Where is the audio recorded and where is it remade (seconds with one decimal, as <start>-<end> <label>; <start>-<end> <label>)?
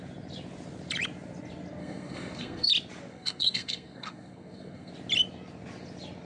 0.0-1.8 recorded; 1.8-2.7 remade; 2.7-3.1 recorded; 3.1-4.9 remade; 4.9-6.3 recorded